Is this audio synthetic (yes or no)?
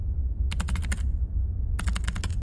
no